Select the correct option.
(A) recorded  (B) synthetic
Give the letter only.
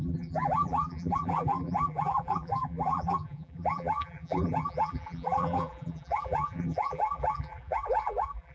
B